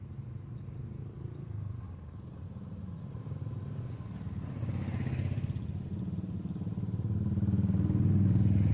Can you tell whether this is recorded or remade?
recorded